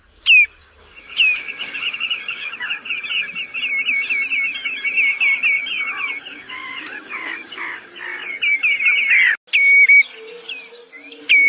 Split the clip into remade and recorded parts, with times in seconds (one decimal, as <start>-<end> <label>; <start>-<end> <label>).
0.0-0.6 recorded; 0.6-2.9 remade; 2.9-6.3 recorded; 6.3-7.9 remade; 7.9-11.5 recorded